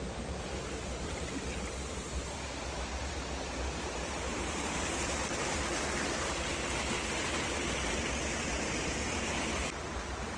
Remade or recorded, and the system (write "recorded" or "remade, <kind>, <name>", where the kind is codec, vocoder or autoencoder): recorded